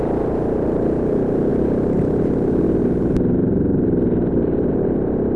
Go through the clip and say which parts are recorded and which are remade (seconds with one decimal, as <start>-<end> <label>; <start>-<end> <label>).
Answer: 0.0-5.4 recorded